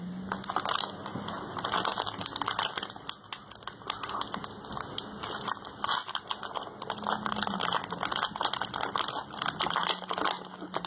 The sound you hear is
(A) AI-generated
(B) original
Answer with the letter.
B